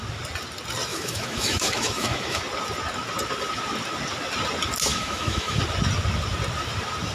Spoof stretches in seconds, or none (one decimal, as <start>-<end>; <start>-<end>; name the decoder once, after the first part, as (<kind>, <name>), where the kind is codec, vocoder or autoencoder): 0.9-2.4 (autoencoder, DAC-VAE); 4.9-5.6